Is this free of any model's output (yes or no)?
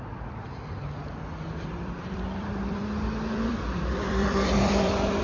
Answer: no